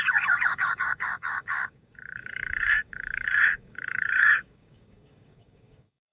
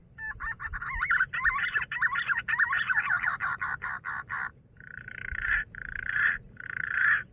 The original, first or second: second